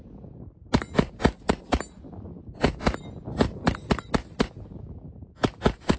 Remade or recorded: recorded